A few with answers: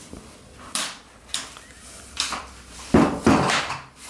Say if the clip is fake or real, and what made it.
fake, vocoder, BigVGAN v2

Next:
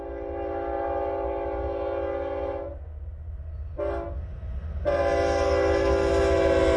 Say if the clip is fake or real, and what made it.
real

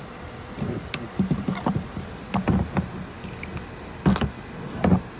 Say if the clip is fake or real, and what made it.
real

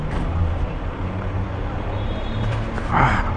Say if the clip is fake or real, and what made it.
fake, vocoder, BigVGAN v2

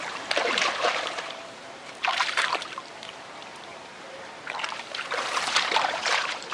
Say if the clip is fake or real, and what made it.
fake, vocoder, BigVGAN v2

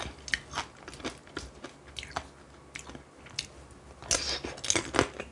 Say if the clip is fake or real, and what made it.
real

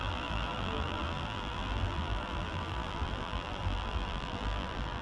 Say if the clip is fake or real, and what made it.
fake, vocoder, BigVGAN v2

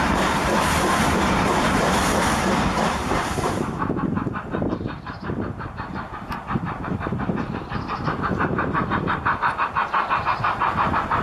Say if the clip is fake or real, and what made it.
fake, vocoder, BigVGAN v2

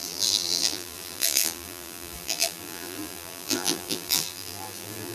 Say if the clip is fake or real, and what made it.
fake, vocoder, BigVGAN v2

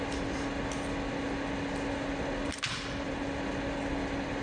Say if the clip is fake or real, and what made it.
real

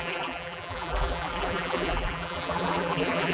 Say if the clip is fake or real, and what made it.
fake, vocoder, BigVGAN v2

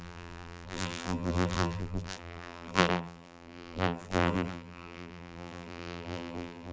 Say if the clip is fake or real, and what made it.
fake, vocoder, BigVGAN v2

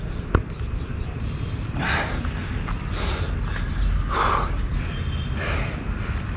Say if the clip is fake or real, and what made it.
fake, vocoder, BigVGAN v2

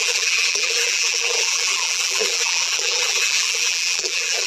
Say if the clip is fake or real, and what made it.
fake, vocoder, BigVGAN v2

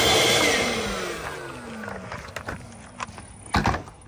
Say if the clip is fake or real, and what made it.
real